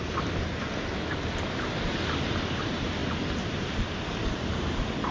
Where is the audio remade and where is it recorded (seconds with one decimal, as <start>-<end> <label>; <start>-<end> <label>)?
0.0-5.1 recorded